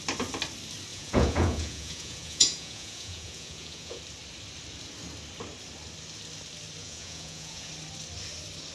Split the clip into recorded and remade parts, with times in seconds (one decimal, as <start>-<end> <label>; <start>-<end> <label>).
0.0-0.9 recorded; 0.9-4.0 remade; 4.0-6.8 recorded; 6.8-7.7 remade; 7.7-8.7 recorded